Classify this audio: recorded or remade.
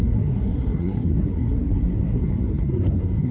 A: remade